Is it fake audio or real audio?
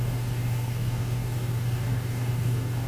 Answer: fake